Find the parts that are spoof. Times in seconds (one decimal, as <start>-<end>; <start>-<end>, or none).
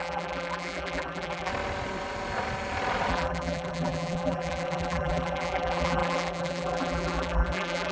0.0-1.5; 3.1-7.9